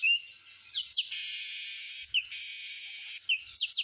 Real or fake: real